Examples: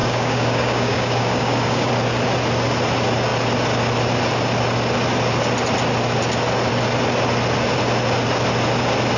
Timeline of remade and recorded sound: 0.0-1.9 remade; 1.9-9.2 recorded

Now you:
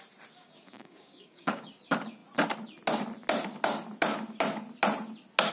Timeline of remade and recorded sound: 0.0-0.4 recorded; 0.4-1.8 remade; 1.8-5.5 recorded

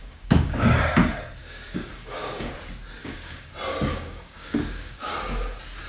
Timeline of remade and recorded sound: 0.0-0.9 remade; 0.9-1.4 recorded; 1.4-2.5 remade; 2.5-3.0 recorded; 3.0-3.5 remade; 3.5-3.9 recorded; 3.9-5.1 remade; 5.1-5.9 recorded